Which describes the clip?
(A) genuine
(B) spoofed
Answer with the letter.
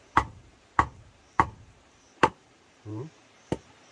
B